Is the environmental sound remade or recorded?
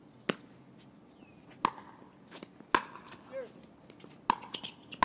recorded